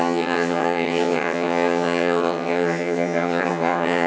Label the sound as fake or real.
fake